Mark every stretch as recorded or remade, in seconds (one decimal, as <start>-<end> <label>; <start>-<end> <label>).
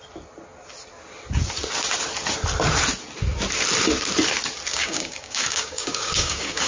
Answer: 0.0-4.7 recorded; 4.7-6.7 remade